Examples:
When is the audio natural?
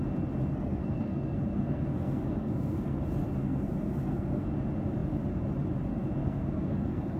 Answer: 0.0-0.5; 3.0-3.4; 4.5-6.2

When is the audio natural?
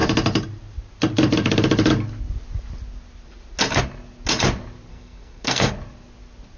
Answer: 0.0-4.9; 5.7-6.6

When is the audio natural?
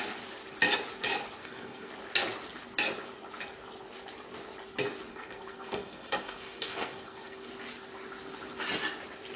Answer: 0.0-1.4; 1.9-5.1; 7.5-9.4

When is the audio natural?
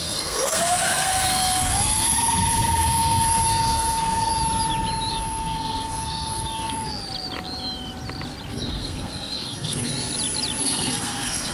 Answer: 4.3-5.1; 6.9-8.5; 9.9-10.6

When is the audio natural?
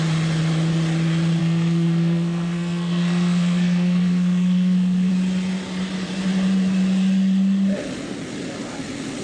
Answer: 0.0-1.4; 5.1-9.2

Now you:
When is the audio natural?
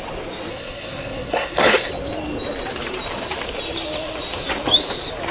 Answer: 0.0-0.5; 1.9-5.3